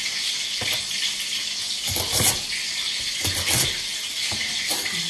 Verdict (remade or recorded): recorded